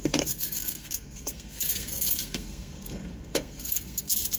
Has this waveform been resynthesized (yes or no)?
yes